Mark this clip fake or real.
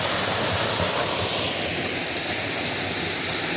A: real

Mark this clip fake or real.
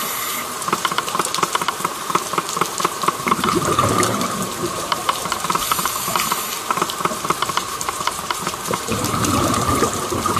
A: fake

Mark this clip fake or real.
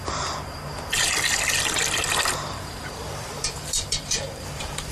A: fake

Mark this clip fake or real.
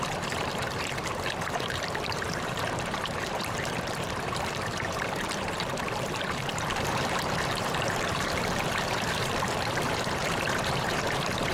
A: fake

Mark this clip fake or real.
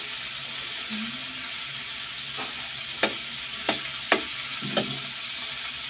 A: real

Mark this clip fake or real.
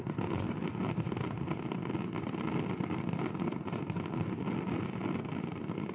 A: real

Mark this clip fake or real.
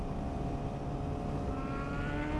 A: real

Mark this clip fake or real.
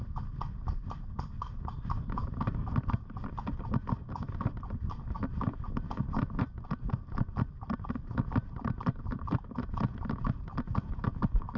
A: real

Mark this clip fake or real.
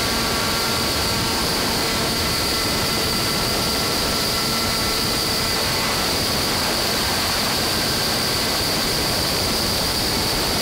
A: fake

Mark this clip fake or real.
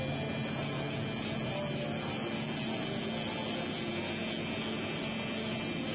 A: real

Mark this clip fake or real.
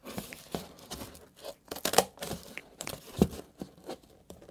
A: fake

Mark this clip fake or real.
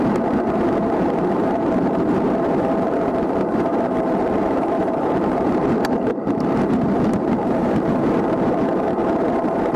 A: fake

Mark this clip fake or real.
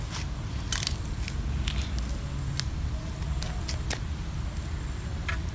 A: real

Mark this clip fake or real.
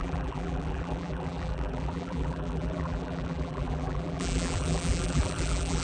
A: fake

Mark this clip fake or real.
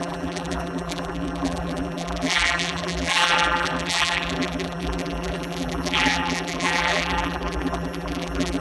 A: fake